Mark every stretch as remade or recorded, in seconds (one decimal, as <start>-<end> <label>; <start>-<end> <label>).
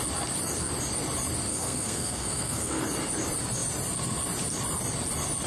0.0-1.5 recorded; 1.5-2.8 remade; 2.8-5.5 recorded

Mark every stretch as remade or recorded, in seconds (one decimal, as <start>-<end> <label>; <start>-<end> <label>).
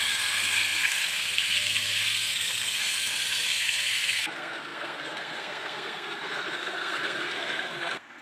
0.0-8.2 remade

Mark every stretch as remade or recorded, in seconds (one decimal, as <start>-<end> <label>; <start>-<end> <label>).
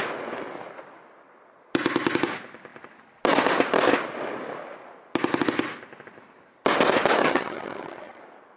0.0-7.2 recorded; 7.2-8.2 remade; 8.2-8.6 recorded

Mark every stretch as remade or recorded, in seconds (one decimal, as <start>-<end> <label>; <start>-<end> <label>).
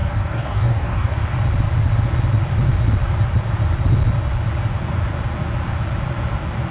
0.0-1.1 remade; 1.1-6.7 recorded